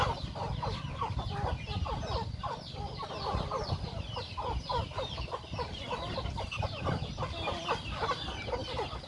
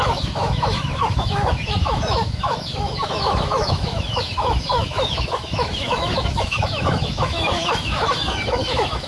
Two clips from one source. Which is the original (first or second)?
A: first